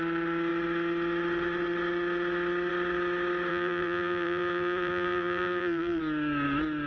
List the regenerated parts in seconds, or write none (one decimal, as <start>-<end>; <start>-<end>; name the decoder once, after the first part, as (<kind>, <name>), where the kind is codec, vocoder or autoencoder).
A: 3.5-6.0 (vocoder, BigVGAN v2)